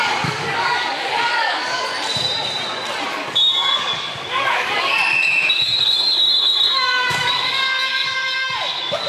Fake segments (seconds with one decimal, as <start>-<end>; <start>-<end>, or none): 0.0-1.9; 3.1-5.0; 5.5-9.1